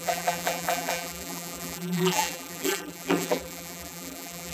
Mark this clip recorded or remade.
remade